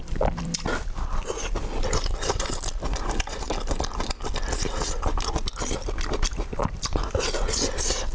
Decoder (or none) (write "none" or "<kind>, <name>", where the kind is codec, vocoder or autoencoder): vocoder, BigVGAN v2